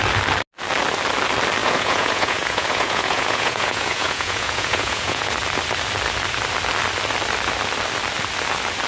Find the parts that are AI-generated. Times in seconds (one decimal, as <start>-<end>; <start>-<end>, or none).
1.6-5.3